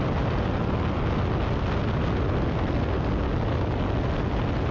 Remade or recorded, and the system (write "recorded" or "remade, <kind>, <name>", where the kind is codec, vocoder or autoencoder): recorded